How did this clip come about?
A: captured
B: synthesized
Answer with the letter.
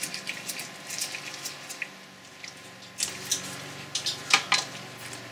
A